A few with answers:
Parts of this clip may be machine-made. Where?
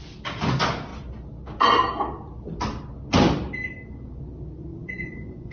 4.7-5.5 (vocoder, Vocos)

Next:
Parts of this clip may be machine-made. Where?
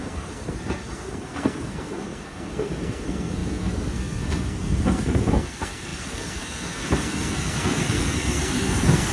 0.0-9.1 (codec, SNAC)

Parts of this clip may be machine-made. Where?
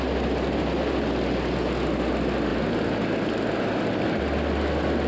none